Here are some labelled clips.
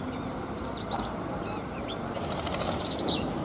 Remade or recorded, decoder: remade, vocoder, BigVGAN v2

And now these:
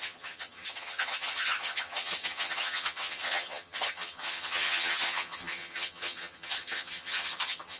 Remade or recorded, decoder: remade, vocoder, HiFi-GAN